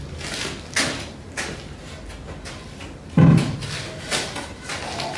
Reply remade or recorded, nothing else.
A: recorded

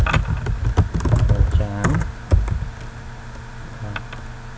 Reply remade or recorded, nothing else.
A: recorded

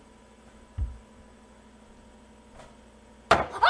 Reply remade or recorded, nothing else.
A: recorded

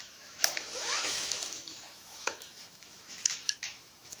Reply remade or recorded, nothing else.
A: remade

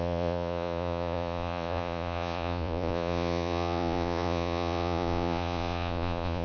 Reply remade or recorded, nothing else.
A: remade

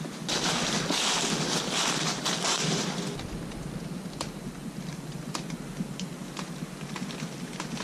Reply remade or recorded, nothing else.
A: recorded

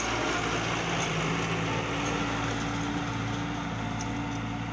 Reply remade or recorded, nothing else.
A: recorded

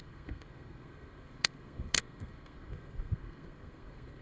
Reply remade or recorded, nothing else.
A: remade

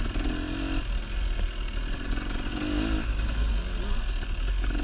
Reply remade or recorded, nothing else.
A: recorded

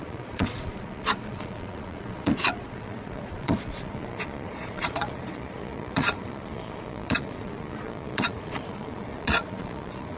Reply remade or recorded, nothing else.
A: remade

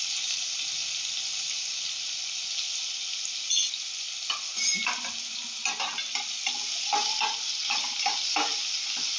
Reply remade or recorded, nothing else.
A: recorded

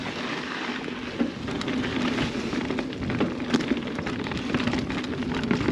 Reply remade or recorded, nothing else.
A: recorded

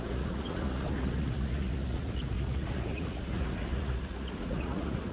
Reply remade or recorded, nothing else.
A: remade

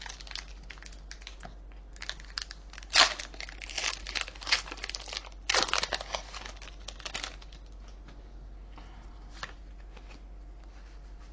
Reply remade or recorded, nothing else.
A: recorded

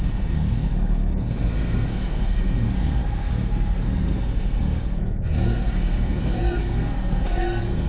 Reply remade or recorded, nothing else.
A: remade